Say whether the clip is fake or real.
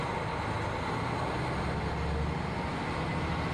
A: real